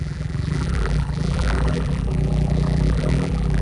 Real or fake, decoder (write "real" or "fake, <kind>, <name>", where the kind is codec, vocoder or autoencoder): fake, vocoder, BigVGAN v2